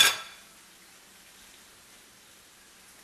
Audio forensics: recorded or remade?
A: recorded